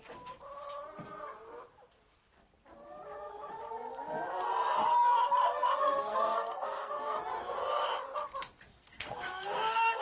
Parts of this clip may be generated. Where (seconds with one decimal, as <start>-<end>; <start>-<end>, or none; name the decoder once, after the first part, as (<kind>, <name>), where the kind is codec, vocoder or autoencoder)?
5.6-7.2 (codec, SNAC); 8.7-10.0